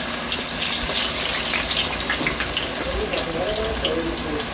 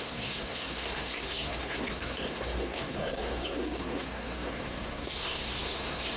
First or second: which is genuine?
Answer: first